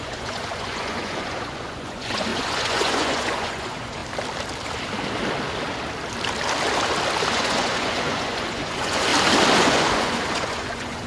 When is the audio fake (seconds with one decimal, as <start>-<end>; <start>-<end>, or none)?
0.0-4.0; 7.3-9.1; 9.6-11.1